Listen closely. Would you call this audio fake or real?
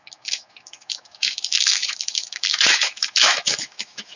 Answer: fake